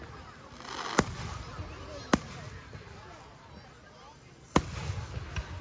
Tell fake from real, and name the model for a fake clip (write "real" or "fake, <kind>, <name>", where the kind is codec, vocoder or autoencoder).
real